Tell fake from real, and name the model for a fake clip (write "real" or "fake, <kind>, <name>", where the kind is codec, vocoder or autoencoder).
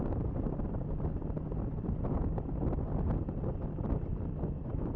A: real